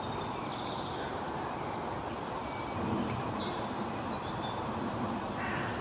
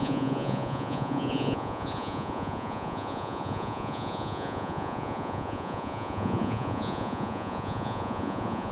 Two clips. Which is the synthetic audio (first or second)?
second